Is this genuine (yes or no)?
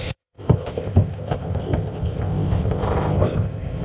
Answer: no